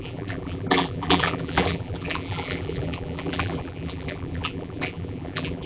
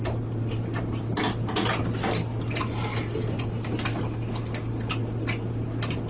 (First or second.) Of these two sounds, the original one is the second